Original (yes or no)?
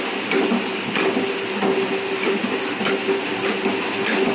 yes